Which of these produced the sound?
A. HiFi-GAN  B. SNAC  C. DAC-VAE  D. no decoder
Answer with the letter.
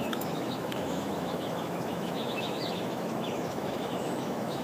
C